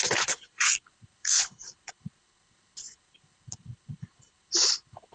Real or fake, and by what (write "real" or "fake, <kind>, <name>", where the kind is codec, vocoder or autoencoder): fake, codec, HILCodec